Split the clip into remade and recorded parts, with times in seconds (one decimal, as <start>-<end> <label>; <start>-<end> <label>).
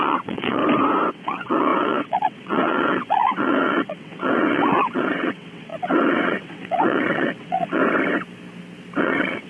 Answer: 0.0-0.6 remade; 0.6-1.1 recorded; 1.1-7.8 remade; 7.8-9.0 recorded; 9.0-9.5 remade